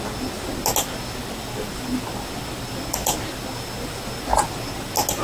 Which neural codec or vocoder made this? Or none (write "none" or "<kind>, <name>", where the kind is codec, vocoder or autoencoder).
none